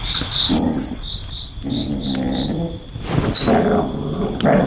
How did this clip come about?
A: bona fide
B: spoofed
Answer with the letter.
A